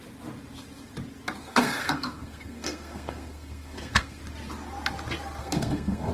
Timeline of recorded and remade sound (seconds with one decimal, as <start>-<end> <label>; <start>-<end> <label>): 0.0-1.4 recorded; 1.4-4.2 remade; 4.2-5.4 recorded; 5.4-6.1 remade